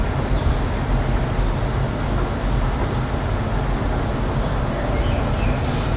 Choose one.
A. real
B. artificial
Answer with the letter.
A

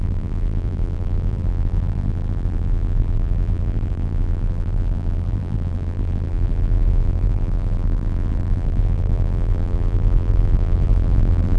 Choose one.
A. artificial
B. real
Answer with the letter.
A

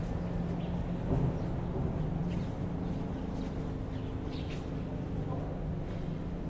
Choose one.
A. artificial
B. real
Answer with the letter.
B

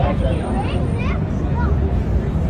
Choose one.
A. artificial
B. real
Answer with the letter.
B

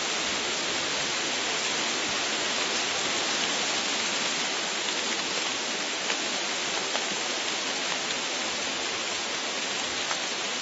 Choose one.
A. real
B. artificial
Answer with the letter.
A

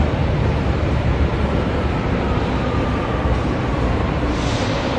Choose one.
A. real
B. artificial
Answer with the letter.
B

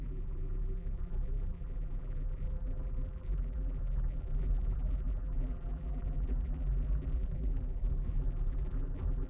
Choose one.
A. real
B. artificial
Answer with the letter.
B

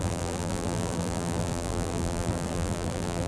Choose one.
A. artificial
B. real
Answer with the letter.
A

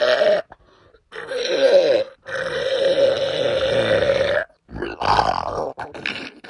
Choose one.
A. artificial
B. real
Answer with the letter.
A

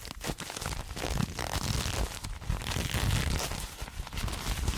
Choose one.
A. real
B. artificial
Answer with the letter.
A